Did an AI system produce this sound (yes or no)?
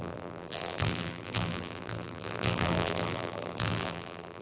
yes